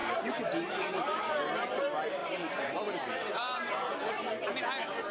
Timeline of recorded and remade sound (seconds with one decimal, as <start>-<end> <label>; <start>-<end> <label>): 0.0-1.8 remade; 1.8-2.2 recorded; 2.2-3.7 remade; 3.7-5.1 recorded

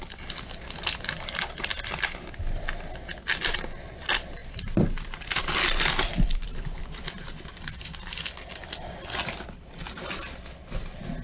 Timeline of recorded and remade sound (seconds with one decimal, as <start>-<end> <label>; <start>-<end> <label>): 0.0-4.4 recorded; 4.4-5.4 remade; 5.4-6.1 recorded; 6.1-6.8 remade; 6.8-11.2 recorded

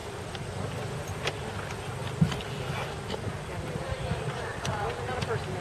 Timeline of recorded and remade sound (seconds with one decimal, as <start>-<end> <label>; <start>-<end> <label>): 0.0-5.6 recorded

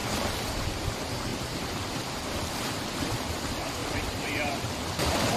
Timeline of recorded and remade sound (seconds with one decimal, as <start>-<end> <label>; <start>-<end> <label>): 0.0-0.7 remade; 0.7-1.3 recorded; 1.3-2.5 remade; 2.5-3.8 recorded; 3.8-4.5 remade; 4.5-5.4 recorded

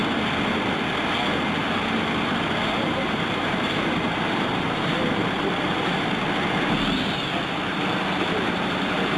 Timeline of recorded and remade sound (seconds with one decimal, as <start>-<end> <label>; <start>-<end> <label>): 0.0-1.6 recorded; 1.6-6.2 remade; 6.2-8.3 recorded; 8.3-9.2 remade

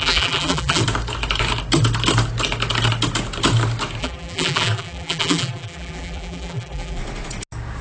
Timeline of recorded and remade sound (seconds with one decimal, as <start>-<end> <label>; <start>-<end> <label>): 0.0-0.8 remade; 0.8-4.0 recorded; 4.0-7.0 remade; 7.0-7.8 recorded